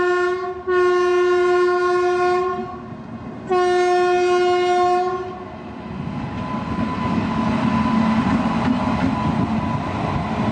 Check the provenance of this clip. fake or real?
real